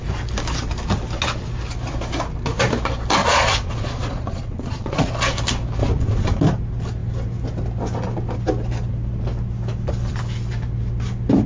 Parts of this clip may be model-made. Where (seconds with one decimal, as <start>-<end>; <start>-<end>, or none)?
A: 3.2-5.1; 5.8-6.4

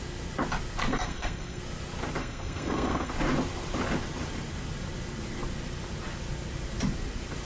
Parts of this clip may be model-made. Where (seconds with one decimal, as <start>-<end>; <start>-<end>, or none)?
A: 0.9-1.6; 2.2-3.1

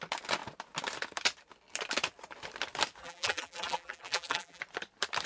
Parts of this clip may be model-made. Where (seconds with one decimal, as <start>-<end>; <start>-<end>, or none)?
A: 3.0-4.6

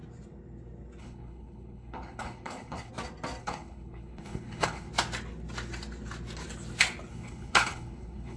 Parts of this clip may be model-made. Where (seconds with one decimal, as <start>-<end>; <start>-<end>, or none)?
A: 1.0-2.9; 3.4-4.9; 7.1-8.4

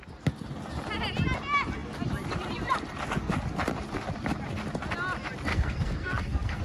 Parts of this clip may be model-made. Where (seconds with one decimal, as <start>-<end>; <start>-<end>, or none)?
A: 5.5-6.6

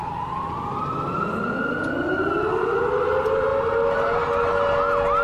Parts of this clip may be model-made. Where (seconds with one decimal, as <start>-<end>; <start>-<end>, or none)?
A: none

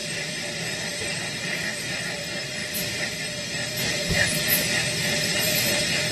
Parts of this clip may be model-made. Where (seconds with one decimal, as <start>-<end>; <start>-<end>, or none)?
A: 0.0-6.1

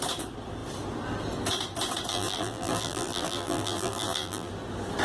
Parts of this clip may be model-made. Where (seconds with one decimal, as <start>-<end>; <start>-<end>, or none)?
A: 2.1-4.5